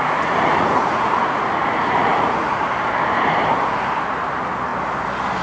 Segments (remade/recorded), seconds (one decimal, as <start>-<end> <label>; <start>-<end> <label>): 0.0-2.6 remade; 2.6-5.4 recorded